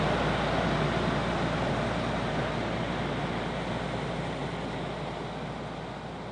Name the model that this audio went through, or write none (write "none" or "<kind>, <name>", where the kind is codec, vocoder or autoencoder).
none